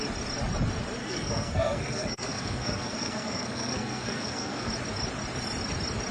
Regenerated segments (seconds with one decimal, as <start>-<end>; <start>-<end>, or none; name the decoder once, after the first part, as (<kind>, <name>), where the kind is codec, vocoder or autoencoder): 1.0-4.7 (codec, SNAC)